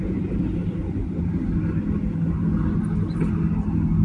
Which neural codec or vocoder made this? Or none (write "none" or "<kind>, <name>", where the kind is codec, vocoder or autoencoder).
none